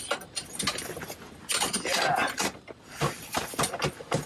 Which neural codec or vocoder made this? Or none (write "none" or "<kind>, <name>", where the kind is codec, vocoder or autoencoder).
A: none